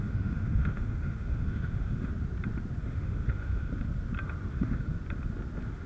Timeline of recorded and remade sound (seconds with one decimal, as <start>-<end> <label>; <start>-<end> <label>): 0.0-2.1 remade; 2.1-2.8 recorded; 2.8-3.7 remade; 3.7-4.5 recorded; 4.5-4.9 remade; 4.9-5.9 recorded